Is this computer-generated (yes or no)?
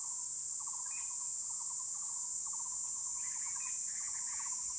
no